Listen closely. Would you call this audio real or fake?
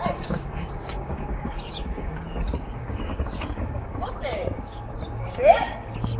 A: fake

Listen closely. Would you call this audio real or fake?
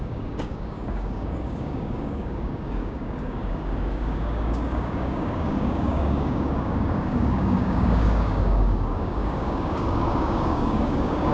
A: fake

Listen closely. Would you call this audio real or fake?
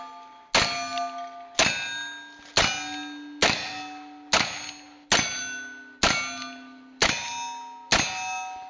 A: real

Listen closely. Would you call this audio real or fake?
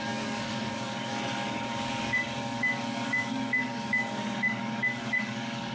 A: fake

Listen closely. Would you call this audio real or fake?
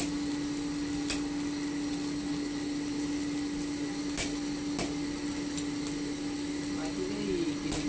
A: real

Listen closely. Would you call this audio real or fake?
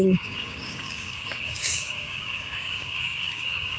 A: fake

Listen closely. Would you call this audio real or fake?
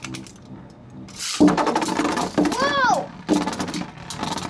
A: real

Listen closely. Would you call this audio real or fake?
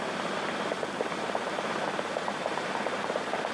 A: real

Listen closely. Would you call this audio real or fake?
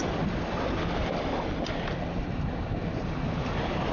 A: real